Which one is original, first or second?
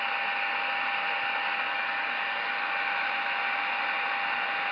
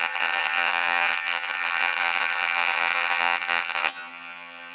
first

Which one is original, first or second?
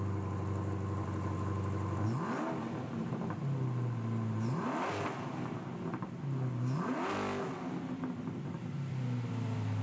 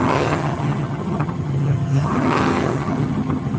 first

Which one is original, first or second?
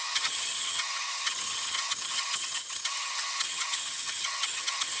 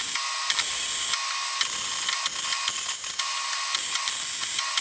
second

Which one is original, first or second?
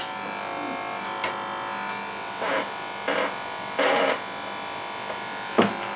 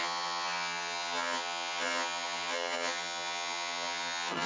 first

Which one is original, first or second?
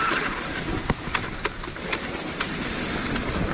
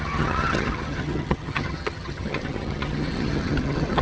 first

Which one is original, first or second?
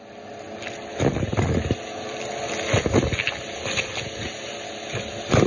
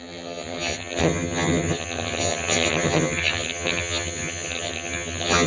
first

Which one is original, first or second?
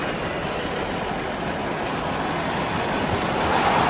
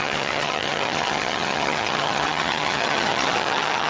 first